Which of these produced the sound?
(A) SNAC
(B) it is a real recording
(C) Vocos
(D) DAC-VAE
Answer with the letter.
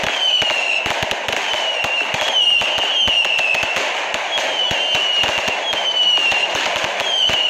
B